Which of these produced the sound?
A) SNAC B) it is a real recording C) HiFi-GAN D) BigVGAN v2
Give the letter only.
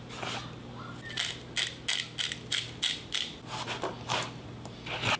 B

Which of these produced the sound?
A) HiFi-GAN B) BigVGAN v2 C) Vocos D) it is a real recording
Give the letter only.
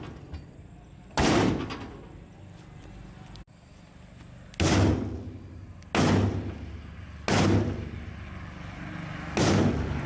D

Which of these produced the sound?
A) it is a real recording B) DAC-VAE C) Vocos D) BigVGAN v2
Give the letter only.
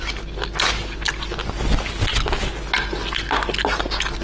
A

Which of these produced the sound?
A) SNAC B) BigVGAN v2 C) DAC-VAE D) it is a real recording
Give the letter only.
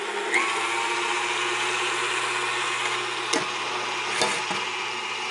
D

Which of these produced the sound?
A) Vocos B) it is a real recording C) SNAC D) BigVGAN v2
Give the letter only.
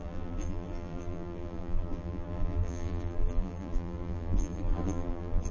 D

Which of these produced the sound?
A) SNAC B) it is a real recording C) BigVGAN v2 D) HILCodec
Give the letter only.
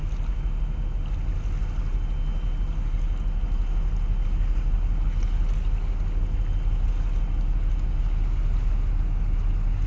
B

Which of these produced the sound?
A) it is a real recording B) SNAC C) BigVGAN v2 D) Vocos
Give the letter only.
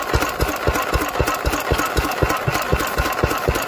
A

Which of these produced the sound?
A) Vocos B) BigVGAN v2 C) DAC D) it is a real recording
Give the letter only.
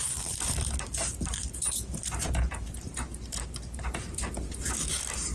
B